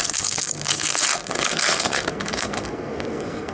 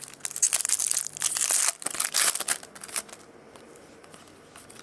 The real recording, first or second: second